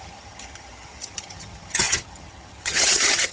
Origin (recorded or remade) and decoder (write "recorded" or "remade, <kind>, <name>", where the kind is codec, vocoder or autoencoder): remade, vocoder, HiFi-GAN